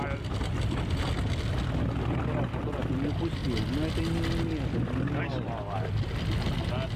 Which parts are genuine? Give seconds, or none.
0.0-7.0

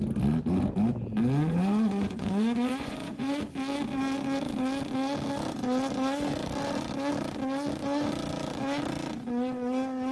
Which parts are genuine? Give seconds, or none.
0.0-1.5; 3.4-10.1